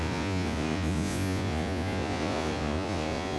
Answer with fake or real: fake